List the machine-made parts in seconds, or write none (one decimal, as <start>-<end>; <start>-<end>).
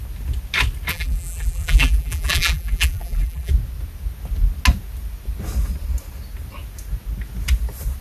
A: 0.9-3.5